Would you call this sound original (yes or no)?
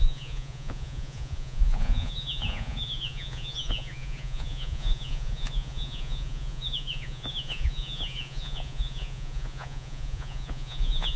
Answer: no